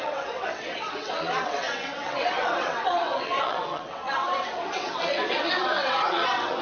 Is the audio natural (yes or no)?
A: no